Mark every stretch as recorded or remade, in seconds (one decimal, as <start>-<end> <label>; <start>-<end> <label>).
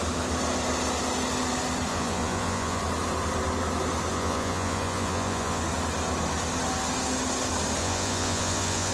0.0-1.9 recorded; 1.9-2.8 remade; 2.8-4.1 recorded; 4.1-5.6 remade; 5.6-7.8 recorded; 7.8-8.9 remade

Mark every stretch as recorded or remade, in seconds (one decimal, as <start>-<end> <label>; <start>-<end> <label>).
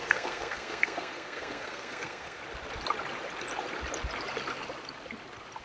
0.0-2.4 remade; 2.4-5.6 recorded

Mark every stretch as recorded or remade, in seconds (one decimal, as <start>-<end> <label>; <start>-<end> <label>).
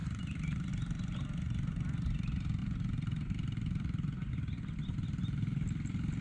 0.0-0.7 remade; 0.7-2.6 recorded; 2.6-4.3 remade; 4.3-6.2 recorded